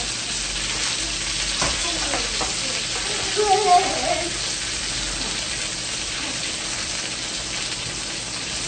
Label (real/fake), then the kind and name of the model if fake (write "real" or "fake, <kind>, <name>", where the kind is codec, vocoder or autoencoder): real